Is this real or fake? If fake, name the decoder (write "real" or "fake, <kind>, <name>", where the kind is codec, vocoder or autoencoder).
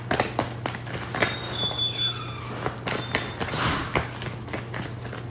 real